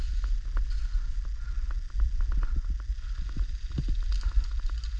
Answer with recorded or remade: recorded